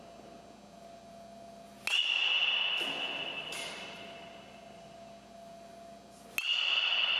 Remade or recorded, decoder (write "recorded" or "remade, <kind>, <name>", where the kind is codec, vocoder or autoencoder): recorded